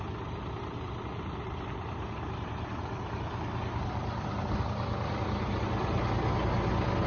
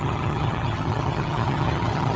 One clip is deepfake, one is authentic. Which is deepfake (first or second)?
second